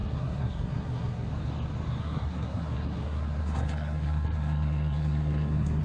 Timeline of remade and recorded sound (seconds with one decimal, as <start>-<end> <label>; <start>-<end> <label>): 0.0-1.3 remade; 1.3-2.0 recorded; 2.0-5.8 remade